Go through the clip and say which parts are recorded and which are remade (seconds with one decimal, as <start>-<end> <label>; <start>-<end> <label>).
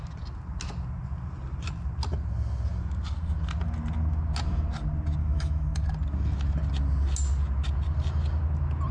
0.0-5.2 recorded; 5.2-5.8 remade; 5.8-8.9 recorded